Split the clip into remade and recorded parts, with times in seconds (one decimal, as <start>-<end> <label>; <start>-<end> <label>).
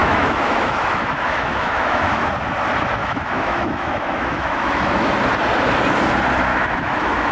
0.0-2.3 remade; 2.3-3.0 recorded; 3.0-5.1 remade; 5.1-6.5 recorded; 6.5-7.3 remade